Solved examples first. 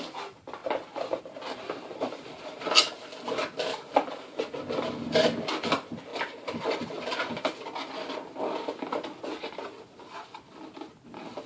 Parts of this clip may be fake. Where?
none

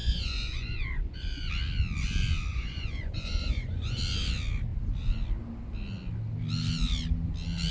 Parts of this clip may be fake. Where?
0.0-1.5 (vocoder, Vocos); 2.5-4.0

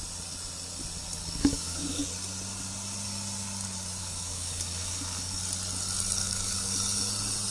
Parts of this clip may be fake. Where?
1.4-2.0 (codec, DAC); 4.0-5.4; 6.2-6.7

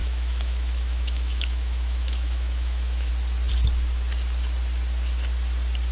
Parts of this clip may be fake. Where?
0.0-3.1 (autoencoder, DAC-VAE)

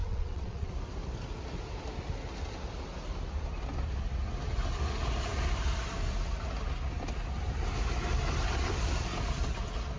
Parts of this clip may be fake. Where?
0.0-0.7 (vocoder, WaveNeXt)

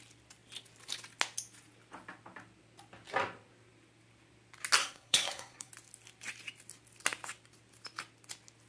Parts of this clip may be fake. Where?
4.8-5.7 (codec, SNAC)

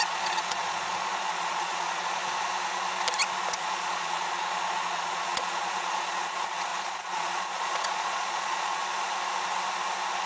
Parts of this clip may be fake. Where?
0.0-2.2 (vocoder, Vocos); 3.5-8.8